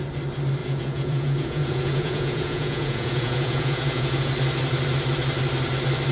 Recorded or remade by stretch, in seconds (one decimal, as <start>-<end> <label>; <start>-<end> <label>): 0.0-0.6 recorded; 0.6-4.3 remade; 4.3-6.1 recorded